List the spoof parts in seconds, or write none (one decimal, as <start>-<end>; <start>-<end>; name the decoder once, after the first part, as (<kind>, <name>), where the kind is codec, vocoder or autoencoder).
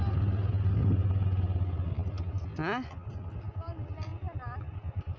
none